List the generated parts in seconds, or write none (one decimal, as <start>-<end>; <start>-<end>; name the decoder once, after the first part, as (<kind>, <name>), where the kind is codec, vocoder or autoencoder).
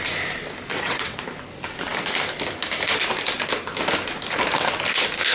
0.7-1.2 (vocoder, WaveNeXt)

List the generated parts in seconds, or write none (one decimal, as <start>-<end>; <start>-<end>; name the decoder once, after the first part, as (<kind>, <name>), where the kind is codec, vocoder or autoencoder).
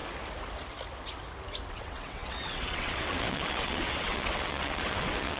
1.7-5.4 (vocoder, WaveNeXt)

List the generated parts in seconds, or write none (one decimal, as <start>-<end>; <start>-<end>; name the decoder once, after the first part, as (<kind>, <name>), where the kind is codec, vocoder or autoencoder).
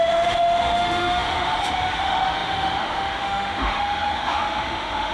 0.0-5.1 (autoencoder, DAC-VAE)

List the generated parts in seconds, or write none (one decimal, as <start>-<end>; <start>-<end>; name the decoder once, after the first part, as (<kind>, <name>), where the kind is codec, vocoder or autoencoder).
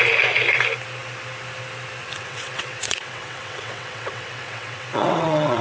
2.0-5.6 (vocoder, WaveNeXt)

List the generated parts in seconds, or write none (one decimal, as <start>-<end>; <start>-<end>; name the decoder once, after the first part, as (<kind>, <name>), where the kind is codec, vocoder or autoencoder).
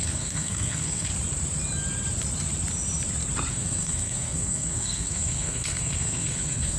0.0-1.1 (codec, SNAC); 3.5-6.8